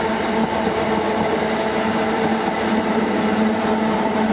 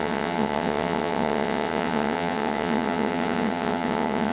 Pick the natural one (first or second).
first